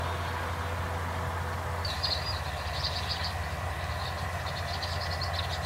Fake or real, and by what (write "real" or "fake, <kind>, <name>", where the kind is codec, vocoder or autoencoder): real